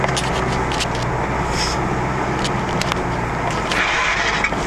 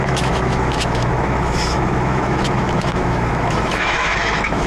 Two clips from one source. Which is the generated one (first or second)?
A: second